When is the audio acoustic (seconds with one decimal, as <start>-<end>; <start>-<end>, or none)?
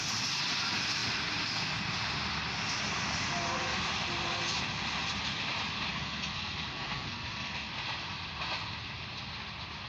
0.0-5.9; 7.7-9.9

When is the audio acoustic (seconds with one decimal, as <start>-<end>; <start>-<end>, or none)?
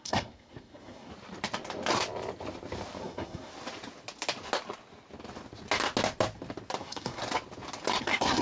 1.1-3.0; 3.5-6.8; 7.2-8.0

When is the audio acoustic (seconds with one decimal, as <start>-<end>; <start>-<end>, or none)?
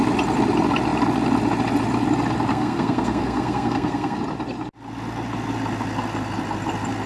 0.0-2.5; 4.2-7.1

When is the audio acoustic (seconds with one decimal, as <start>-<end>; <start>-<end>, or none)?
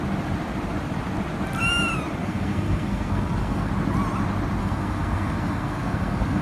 0.0-2.2; 3.7-4.6